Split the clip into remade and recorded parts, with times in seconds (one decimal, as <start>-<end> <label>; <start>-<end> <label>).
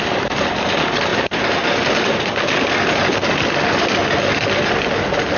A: 0.0-5.4 recorded